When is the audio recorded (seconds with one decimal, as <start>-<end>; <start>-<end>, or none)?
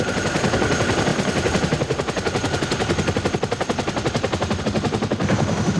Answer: 0.0-5.8